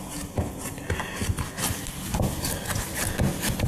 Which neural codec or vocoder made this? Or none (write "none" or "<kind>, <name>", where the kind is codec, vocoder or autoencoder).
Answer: none